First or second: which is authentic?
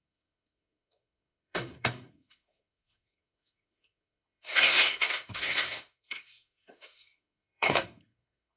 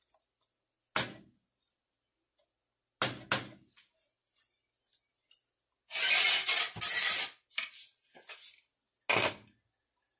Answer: second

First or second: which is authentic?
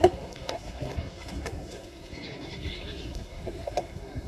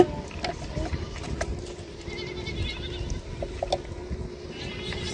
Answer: second